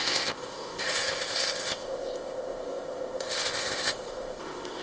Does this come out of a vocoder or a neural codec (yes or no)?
yes